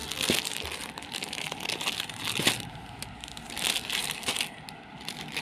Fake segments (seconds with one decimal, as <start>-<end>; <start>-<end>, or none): none